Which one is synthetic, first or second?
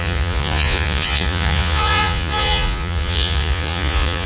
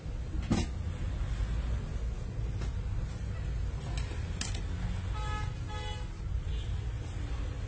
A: first